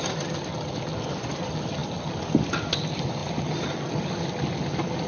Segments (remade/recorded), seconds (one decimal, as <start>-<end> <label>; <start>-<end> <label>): 0.0-5.1 recorded